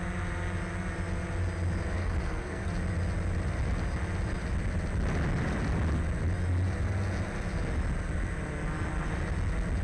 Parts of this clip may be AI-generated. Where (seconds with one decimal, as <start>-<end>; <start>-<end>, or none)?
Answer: 2.0-2.7

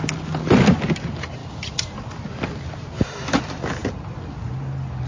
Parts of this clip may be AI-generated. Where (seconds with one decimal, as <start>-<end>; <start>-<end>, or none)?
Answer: 1.4-3.4

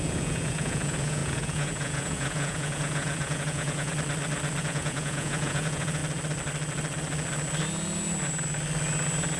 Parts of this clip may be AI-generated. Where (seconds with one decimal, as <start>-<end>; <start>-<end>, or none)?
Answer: 0.0-3.9; 4.6-6.0